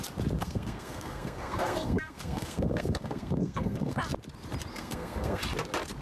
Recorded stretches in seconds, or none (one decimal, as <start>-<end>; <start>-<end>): 0.0-0.4; 4.0-4.7; 5.4-6.0